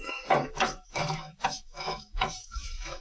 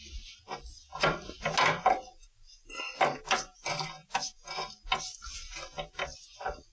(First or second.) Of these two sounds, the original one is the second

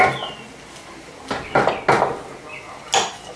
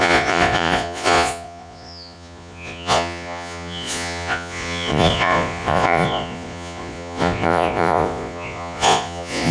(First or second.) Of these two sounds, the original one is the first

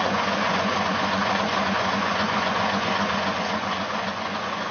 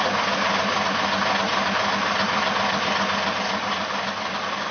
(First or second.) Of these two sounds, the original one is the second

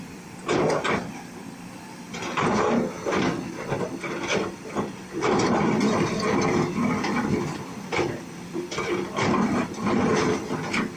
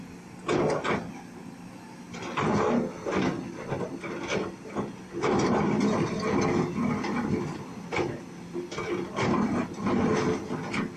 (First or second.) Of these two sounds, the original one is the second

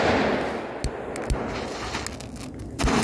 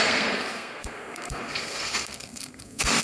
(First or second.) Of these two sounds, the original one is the first